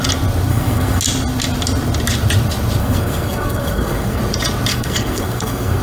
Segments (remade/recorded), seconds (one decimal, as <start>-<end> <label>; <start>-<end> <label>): 0.0-0.5 recorded; 0.5-1.0 remade; 1.0-2.8 recorded; 2.8-4.2 remade; 4.2-4.7 recorded; 4.7-5.8 remade